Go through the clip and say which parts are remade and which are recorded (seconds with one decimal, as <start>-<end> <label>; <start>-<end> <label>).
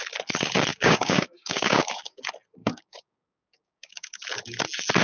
0.0-0.7 recorded; 0.7-2.2 remade; 2.2-2.6 recorded; 2.6-4.2 remade; 4.2-5.0 recorded